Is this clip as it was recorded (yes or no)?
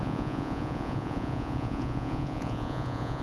no